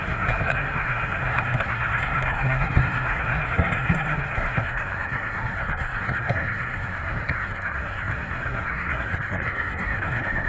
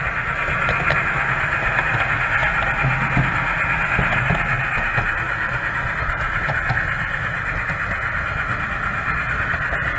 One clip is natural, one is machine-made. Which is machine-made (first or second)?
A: first